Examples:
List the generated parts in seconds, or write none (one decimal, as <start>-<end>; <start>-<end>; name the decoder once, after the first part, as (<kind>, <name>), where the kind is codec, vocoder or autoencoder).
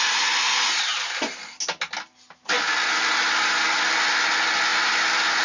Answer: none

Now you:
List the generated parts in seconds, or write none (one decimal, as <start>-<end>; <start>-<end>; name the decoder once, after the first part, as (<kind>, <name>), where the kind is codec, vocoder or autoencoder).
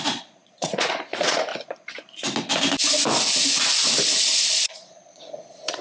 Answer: 0.0-1.5 (vocoder, Vocos); 4.5-5.8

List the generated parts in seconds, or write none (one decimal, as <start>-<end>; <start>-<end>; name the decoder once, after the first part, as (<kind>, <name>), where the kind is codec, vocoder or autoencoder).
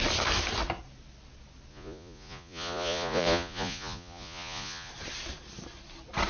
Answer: 1.7-4.9 (vocoder, Vocos)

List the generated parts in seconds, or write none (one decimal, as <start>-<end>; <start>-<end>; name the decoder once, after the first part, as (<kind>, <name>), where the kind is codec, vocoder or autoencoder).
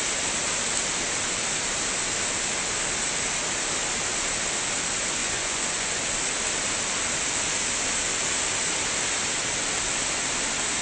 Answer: 5.2-6.0 (vocoder, Vocos)